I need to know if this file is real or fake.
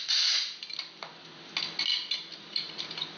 real